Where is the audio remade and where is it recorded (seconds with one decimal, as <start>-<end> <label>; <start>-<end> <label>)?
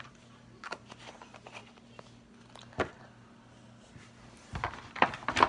0.0-5.5 recorded